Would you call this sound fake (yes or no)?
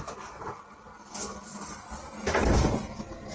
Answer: no